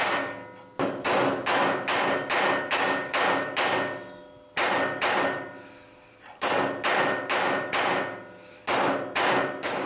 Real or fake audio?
real